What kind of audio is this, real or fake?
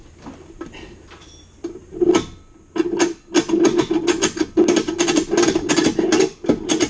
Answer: real